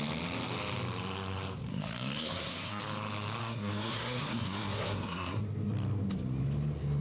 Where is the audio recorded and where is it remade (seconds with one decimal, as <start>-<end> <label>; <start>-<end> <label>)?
0.0-1.7 recorded; 1.7-2.8 remade; 2.8-3.4 recorded; 3.4-5.4 remade; 5.4-7.0 recorded